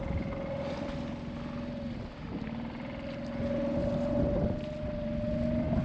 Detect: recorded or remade recorded